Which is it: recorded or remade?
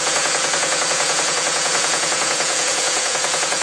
remade